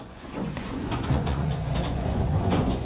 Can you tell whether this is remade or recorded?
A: remade